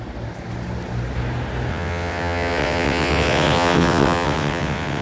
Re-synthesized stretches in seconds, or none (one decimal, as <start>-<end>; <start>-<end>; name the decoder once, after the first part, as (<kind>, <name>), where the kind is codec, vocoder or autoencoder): 1.7-5.0 (vocoder, WaveNeXt)